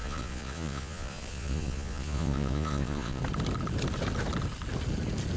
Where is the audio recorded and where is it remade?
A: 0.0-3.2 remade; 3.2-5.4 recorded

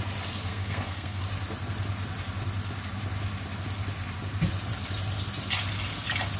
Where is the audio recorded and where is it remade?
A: 0.0-0.5 recorded; 0.5-1.2 remade; 1.2-6.4 recorded

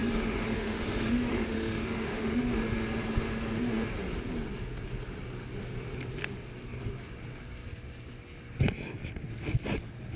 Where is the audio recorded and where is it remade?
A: 0.0-2.4 remade; 2.4-10.2 recorded

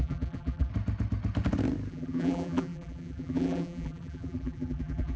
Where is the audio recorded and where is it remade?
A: 0.0-0.7 remade; 0.7-1.9 recorded; 1.9-5.2 remade

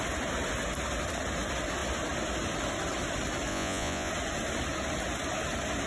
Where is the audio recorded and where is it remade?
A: 0.0-3.5 recorded; 3.5-4.1 remade; 4.1-5.9 recorded